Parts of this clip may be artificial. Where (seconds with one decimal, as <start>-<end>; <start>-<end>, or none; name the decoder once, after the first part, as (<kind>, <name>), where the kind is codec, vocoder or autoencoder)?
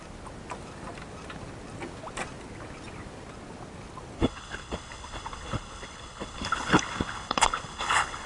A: 4.2-8.3 (codec, HILCodec)